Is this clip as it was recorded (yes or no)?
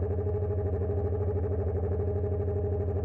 yes